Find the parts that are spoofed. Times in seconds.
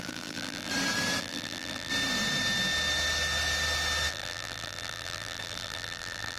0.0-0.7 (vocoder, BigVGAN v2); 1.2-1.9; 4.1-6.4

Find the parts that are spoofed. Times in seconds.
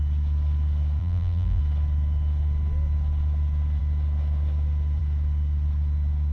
1.0-1.6 (vocoder, BigVGAN v2)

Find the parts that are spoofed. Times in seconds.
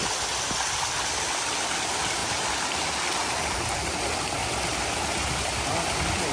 2.2-3.6 (vocoder, BigVGAN v2)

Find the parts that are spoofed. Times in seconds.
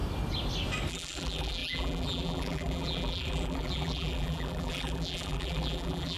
0.9-6.2 (vocoder, BigVGAN v2)